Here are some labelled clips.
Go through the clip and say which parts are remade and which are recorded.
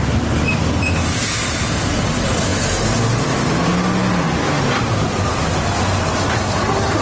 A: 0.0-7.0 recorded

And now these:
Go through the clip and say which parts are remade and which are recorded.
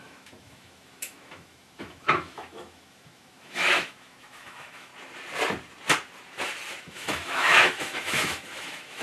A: 0.0-4.9 remade; 4.9-6.8 recorded; 6.8-9.0 remade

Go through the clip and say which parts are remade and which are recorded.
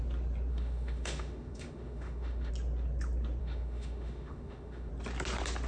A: 0.0-0.5 recorded; 0.5-2.5 remade; 2.5-3.4 recorded; 3.4-4.9 remade; 4.9-5.7 recorded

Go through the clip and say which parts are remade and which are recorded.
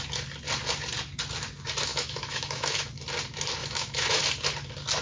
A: 0.0-1.9 recorded; 1.9-2.8 remade; 2.8-3.6 recorded; 3.6-4.2 remade; 4.2-5.0 recorded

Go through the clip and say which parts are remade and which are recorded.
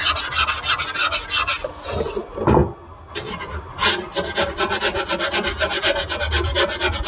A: 0.0-7.1 recorded